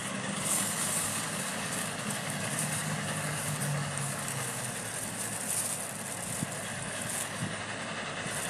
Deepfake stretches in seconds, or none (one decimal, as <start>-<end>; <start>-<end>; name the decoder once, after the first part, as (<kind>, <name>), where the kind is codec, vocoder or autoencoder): 0.0-4.6 (codec, DAC); 6.7-7.6